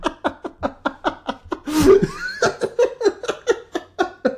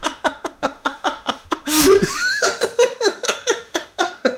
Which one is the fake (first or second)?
second